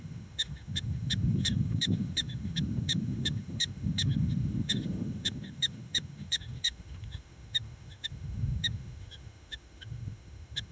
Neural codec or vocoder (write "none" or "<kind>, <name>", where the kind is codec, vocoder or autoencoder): autoencoder, DAC-VAE